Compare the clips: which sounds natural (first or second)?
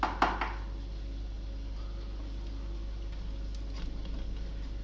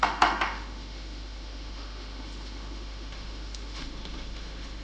first